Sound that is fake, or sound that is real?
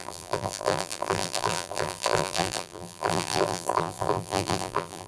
fake